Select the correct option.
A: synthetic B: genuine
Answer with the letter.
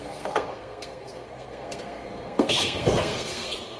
A